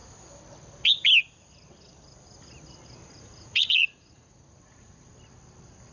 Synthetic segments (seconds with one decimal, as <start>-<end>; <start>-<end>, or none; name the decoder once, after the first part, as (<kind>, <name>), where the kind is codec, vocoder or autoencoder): 3.0-5.1 (vocoder, Vocos)